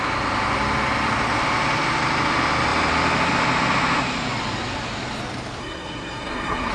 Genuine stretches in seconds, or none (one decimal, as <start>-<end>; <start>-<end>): 0.0-5.6